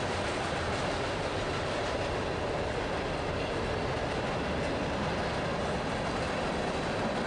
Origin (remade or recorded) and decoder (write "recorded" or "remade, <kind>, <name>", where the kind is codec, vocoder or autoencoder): recorded